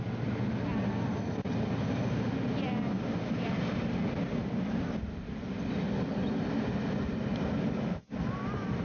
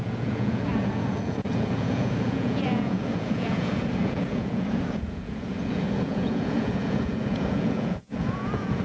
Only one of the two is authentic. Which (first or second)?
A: first